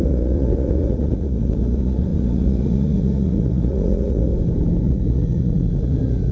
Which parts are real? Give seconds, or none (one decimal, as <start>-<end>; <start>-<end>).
4.3-4.8